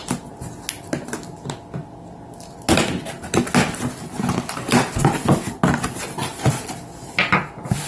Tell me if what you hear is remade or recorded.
recorded